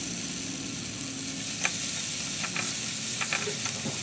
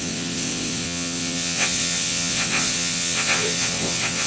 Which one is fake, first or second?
second